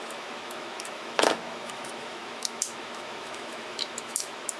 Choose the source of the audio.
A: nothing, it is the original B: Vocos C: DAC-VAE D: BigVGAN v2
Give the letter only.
C